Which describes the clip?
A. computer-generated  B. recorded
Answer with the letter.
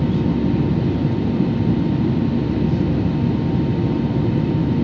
B